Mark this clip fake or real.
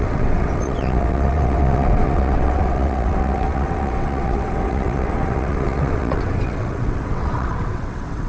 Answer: fake